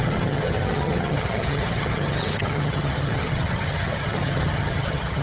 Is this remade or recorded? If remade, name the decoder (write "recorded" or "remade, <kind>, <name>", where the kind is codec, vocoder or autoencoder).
remade, vocoder, HiFi-GAN